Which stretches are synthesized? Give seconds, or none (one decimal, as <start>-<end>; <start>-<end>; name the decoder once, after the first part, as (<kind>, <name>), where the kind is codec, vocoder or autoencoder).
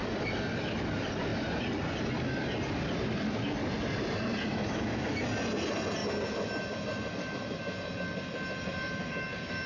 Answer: 4.5-5.2 (autoencoder, DAC-VAE)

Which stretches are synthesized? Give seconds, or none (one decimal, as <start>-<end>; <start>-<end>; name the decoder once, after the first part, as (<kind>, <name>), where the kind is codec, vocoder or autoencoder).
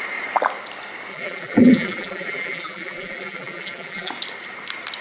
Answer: 1.1-4.1 (vocoder, BigVGAN v2)